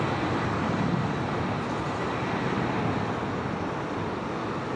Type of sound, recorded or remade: recorded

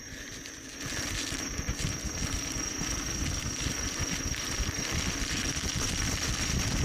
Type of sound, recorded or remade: recorded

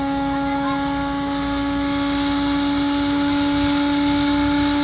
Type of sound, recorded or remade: recorded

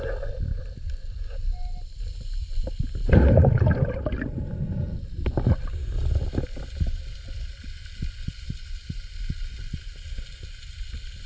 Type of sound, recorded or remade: recorded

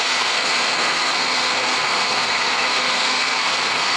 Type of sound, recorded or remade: remade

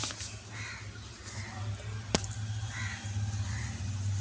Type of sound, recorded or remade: recorded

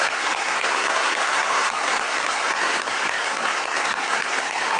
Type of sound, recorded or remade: remade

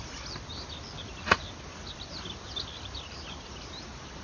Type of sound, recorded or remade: recorded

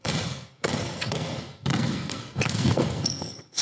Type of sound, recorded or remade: remade